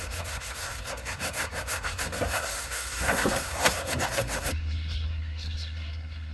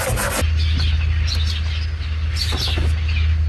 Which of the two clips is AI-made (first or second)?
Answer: first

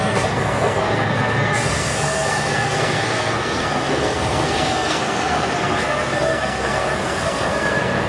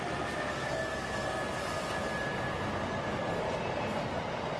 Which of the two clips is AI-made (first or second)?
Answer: first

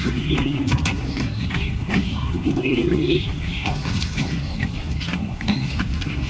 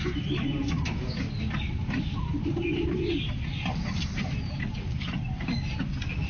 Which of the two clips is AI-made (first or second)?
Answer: first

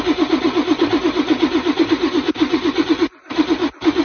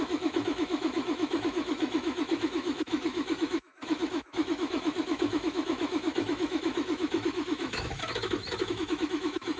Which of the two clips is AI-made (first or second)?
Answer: second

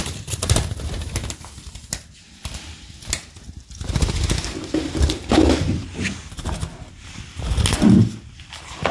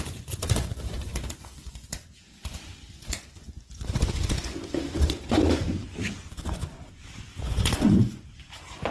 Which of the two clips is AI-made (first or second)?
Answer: second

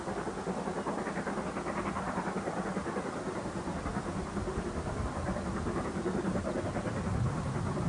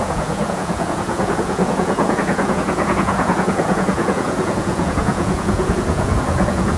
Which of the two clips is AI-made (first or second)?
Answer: second